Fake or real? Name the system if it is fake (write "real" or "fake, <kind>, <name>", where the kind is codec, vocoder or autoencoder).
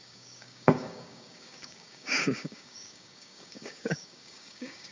fake, codec, DAC